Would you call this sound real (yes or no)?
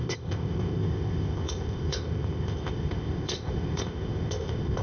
no